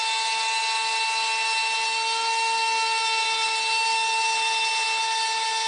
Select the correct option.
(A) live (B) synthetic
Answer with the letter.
A